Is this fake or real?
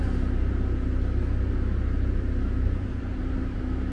real